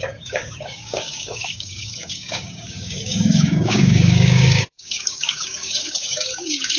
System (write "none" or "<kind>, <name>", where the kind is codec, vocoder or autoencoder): codec, DAC